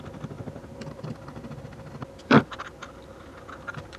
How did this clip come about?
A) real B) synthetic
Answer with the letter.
A